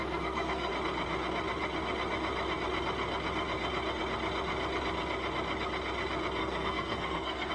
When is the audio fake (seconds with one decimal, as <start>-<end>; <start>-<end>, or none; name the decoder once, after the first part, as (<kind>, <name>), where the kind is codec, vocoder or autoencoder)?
0.0-0.7 (codec, SNAC); 6.4-7.5